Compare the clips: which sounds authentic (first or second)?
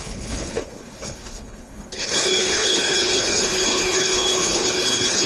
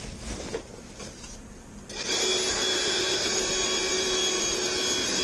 second